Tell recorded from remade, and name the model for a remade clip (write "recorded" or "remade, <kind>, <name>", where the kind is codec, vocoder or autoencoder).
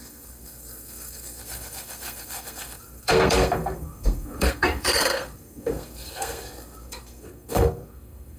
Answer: remade, codec, SNAC